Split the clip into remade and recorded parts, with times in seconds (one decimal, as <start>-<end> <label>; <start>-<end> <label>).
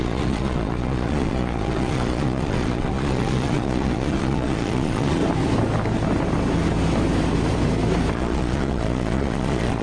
0.0-5.2 remade; 5.2-8.1 recorded; 8.1-9.8 remade